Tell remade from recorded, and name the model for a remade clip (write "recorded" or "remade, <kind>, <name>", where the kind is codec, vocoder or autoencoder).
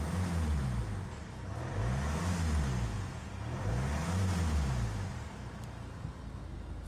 recorded